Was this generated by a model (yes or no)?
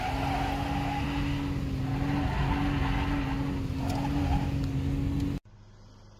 no